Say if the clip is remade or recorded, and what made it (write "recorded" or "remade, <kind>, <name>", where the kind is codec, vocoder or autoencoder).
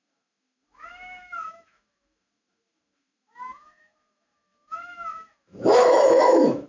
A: remade, autoencoder, DAC-VAE